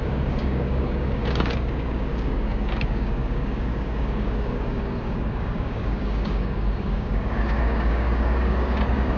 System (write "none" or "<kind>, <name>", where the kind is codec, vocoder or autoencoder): codec, DAC